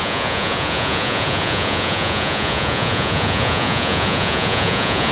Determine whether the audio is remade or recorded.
remade